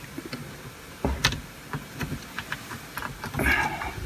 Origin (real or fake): real